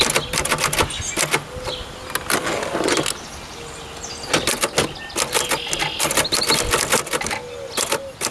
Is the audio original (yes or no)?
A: yes